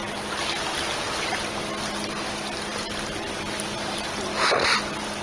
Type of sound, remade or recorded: recorded